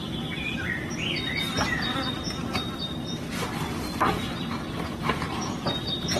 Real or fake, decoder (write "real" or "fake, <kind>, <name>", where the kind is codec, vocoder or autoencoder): real